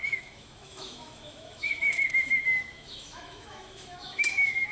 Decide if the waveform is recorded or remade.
remade